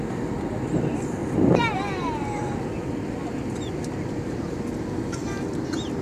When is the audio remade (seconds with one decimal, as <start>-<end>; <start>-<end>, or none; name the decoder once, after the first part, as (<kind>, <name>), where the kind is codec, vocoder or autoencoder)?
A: none